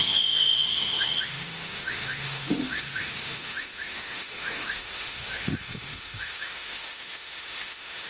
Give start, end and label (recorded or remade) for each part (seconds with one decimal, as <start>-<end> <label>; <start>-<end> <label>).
0.0-8.1 remade